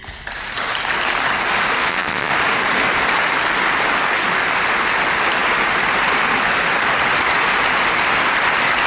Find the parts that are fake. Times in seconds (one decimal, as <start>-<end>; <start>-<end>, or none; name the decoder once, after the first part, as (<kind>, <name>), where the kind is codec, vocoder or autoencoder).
1.8-2.3 (vocoder, Vocos)